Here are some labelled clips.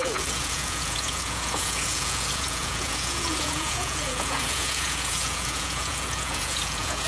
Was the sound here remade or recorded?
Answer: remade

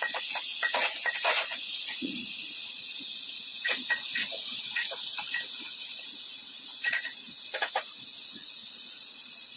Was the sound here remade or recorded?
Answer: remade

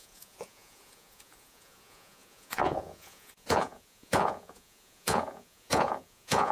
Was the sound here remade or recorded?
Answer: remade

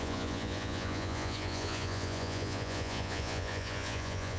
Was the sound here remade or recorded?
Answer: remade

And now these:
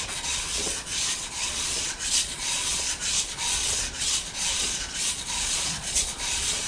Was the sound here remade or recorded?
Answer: remade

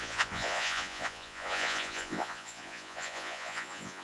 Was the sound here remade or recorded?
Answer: remade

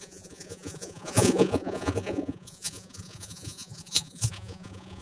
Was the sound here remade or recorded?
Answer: remade